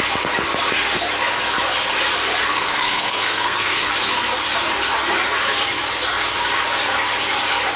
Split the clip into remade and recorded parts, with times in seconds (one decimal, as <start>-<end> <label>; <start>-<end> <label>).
0.0-2.5 recorded; 2.5-3.9 remade; 3.9-7.8 recorded